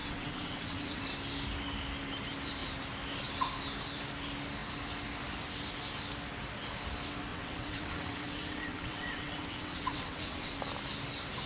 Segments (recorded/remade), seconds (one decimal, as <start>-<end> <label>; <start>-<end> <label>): 0.0-1.0 remade; 1.0-7.3 recorded; 7.3-10.5 remade; 10.5-11.5 recorded